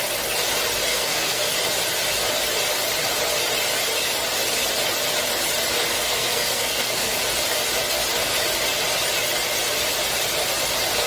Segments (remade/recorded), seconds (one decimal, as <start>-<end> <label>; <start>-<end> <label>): 0.0-0.9 recorded; 0.9-1.5 remade; 1.5-5.9 recorded; 5.9-7.2 remade; 7.2-11.1 recorded